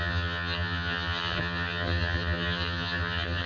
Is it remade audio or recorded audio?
remade